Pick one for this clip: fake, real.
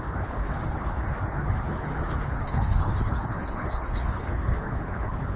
fake